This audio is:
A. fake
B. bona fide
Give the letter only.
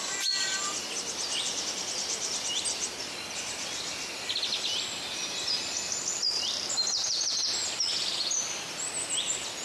B